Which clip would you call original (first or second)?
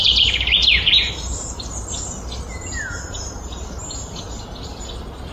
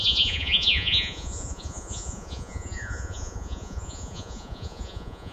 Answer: first